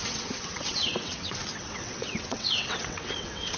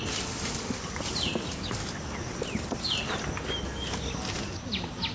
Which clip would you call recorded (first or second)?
second